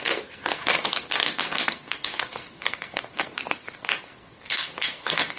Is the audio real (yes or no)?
no